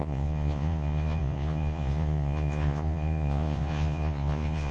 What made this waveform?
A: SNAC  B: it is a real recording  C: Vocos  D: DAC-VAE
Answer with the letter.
C